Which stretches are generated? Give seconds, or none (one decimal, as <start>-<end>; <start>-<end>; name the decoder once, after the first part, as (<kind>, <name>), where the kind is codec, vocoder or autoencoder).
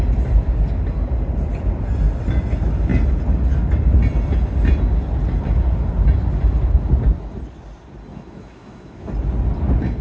8.1-9.1 (autoencoder, DAC-VAE)